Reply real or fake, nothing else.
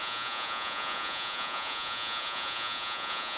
fake